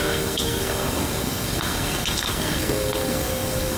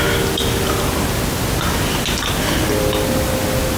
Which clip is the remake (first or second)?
first